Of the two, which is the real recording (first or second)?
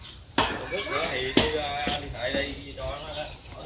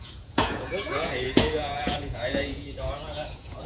first